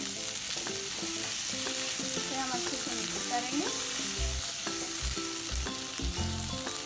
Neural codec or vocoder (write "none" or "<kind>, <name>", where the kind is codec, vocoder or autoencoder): none